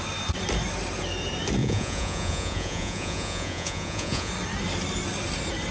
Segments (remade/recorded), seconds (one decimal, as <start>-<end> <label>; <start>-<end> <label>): 0.0-1.6 recorded; 1.6-4.3 remade; 4.3-5.7 recorded